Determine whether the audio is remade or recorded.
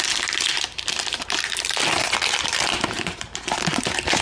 recorded